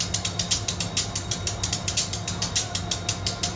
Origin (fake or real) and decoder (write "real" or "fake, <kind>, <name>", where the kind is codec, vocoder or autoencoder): real